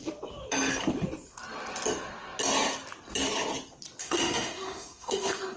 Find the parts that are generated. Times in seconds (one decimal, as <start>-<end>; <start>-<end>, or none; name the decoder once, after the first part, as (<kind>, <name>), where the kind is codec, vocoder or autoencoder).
4.0-5.6 (autoencoder, DAC-VAE)